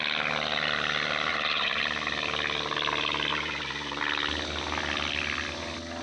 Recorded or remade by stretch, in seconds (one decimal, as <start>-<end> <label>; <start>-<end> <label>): 0.0-1.3 recorded; 1.3-1.8 remade; 1.8-3.3 recorded; 3.3-4.0 remade; 4.0-6.0 recorded